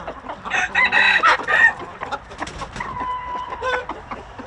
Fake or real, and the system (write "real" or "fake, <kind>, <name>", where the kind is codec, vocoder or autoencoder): real